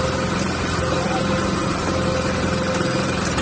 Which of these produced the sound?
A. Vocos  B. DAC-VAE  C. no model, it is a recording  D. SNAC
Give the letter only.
C